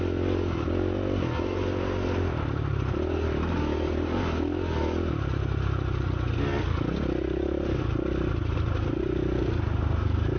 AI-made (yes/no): no